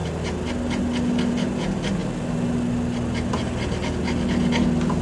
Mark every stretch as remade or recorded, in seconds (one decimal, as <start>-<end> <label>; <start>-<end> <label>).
0.0-5.0 recorded